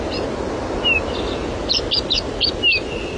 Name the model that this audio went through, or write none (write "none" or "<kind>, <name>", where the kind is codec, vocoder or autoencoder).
none